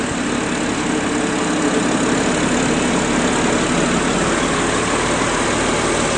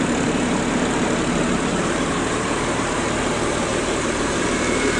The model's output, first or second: second